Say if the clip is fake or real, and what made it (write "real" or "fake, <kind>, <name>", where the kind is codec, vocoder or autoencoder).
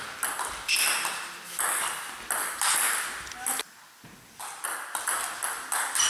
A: real